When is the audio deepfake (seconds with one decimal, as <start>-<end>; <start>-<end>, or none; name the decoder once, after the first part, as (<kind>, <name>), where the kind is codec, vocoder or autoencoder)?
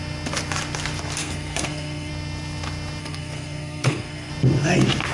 1.2-2.1 (codec, SNAC); 3.0-4.3